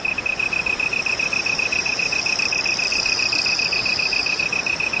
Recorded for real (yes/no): yes